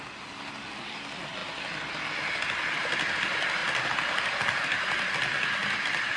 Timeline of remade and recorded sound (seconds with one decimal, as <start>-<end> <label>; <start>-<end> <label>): 0.0-6.2 recorded